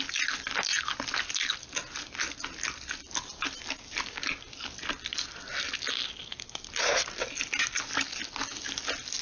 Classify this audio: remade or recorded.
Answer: recorded